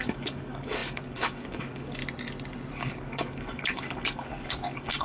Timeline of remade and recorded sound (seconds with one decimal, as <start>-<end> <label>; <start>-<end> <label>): 0.0-2.0 remade; 2.0-2.7 recorded; 2.7-5.0 remade